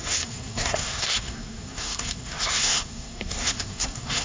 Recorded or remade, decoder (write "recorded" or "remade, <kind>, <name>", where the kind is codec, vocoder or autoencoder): remade, codec, SNAC